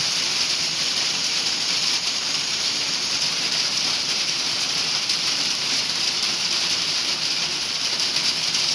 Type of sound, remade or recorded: remade